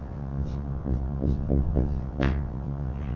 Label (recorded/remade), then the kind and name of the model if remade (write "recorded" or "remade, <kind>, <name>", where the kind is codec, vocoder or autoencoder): remade, vocoder, WaveNeXt